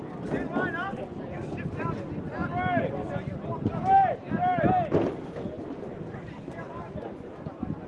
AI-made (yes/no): no